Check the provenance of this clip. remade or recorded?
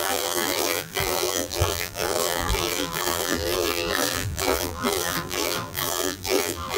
remade